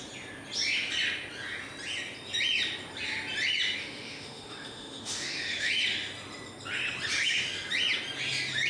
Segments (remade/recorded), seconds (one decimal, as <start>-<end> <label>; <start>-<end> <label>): 0.0-3.8 recorded; 3.8-5.7 remade; 5.7-8.7 recorded